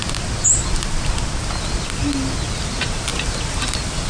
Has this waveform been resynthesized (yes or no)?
no